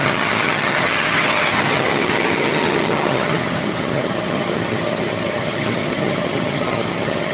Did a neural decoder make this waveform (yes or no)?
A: yes